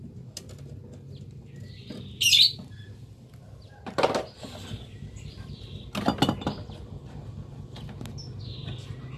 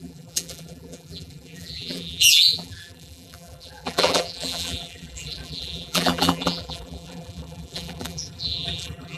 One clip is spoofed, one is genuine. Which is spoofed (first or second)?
second